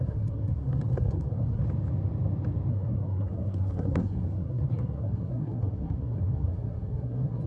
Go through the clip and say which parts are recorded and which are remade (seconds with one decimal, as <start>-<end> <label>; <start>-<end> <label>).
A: 0.0-1.6 remade; 1.6-2.7 recorded; 2.7-7.5 remade